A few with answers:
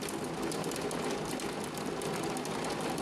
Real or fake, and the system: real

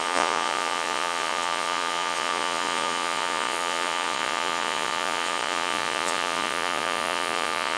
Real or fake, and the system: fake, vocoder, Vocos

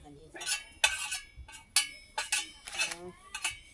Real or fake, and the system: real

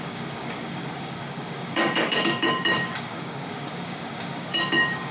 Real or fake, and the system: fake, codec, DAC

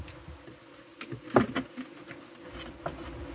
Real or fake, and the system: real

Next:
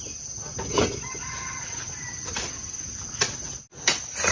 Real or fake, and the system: real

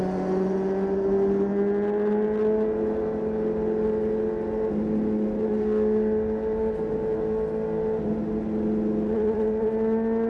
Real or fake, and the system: real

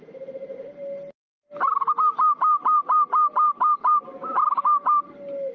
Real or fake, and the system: real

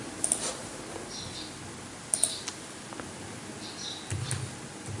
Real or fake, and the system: real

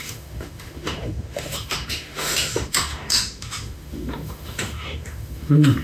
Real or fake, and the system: fake, autoencoder, DAC-VAE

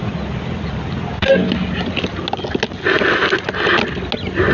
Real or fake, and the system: real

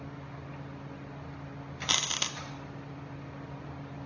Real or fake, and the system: real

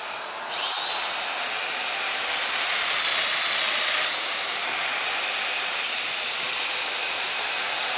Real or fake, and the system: real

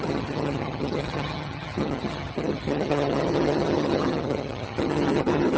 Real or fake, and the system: fake, vocoder, HiFi-GAN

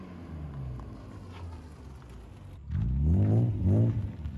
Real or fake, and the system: real